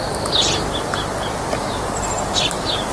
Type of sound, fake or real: real